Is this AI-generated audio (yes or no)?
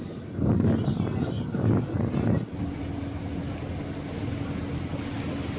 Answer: no